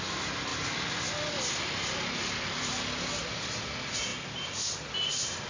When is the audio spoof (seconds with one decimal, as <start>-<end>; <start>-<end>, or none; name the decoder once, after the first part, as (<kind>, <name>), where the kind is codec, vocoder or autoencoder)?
none